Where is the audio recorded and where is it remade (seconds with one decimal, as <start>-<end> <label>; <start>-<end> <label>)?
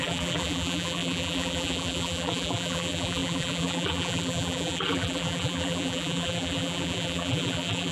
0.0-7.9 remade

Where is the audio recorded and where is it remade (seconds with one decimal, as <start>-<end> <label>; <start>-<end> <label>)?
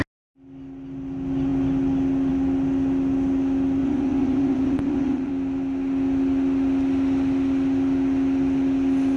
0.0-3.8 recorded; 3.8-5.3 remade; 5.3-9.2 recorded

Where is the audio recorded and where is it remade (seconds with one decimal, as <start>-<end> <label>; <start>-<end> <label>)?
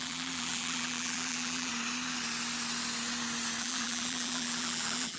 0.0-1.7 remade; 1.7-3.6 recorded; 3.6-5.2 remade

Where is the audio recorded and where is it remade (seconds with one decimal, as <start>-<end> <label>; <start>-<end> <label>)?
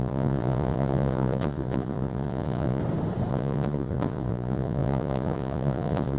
0.0-2.8 remade; 2.8-3.3 recorded; 3.3-6.2 remade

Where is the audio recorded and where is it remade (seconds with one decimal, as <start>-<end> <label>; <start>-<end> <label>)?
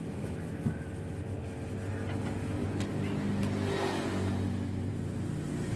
0.0-5.8 recorded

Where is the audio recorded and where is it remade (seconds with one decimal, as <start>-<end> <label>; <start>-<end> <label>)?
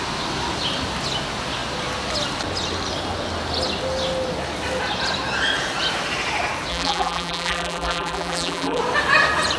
0.0-6.7 recorded; 6.7-8.8 remade; 8.8-9.6 recorded